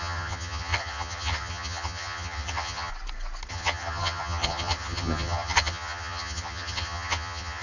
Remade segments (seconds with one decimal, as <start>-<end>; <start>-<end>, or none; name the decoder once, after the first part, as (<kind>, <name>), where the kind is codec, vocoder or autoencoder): 0.0-2.9 (vocoder, HiFi-GAN); 3.5-7.6